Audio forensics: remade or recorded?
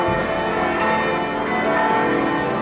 recorded